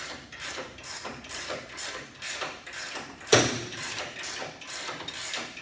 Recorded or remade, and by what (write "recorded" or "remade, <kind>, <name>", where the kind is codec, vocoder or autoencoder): remade, vocoder, BigVGAN v2